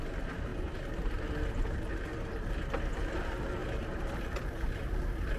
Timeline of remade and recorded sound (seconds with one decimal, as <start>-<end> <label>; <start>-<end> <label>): 0.0-5.4 recorded